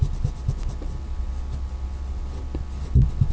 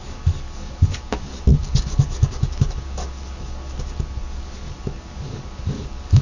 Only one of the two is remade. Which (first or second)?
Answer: second